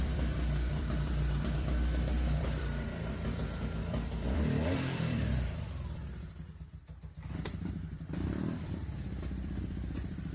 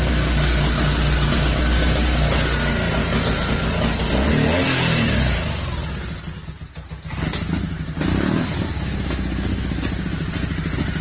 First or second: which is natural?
second